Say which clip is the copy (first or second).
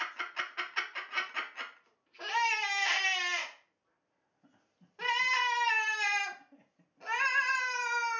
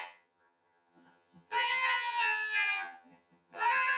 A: second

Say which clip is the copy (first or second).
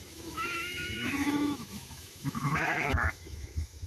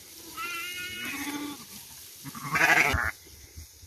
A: first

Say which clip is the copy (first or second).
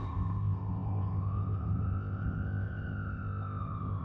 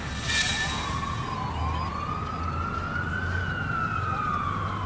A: first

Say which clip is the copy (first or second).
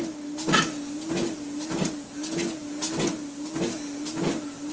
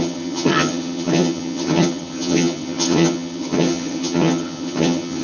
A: second